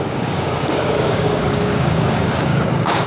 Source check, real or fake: fake